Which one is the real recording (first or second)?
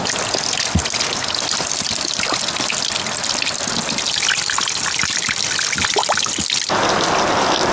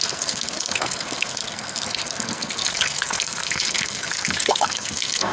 first